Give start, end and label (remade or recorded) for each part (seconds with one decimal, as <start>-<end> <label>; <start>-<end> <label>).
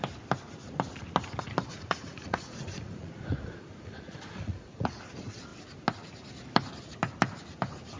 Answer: 0.0-1.7 recorded; 1.7-5.0 remade; 5.0-8.0 recorded